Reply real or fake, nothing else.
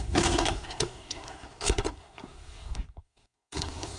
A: fake